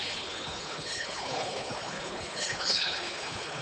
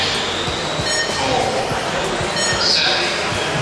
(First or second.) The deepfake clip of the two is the first